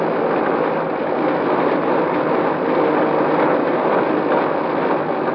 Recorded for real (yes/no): yes